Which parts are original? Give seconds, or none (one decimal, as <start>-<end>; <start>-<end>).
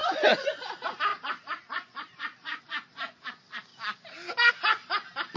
0.7-1.1; 2.6-5.4